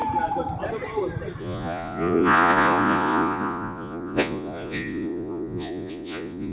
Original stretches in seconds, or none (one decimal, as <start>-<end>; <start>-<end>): 0.0-1.4